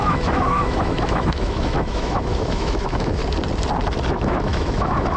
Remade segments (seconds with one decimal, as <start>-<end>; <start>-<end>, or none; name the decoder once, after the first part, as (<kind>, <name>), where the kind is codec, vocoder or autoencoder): 0.0-3.2 (autoencoder, DAC-VAE); 4.1-5.2